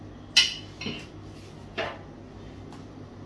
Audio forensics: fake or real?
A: real